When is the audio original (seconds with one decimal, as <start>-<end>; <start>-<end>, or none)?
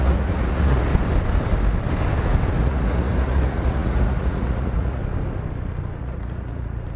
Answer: 0.9-2.6; 5.0-6.0